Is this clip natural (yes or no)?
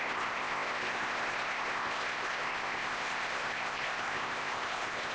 no